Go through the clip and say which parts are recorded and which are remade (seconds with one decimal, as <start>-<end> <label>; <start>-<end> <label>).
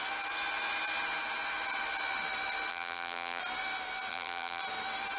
0.0-2.7 recorded; 2.7-3.4 remade; 3.4-4.1 recorded; 4.1-4.6 remade; 4.6-5.2 recorded